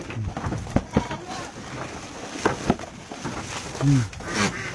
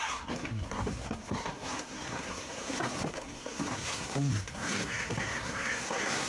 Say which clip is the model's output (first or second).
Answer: second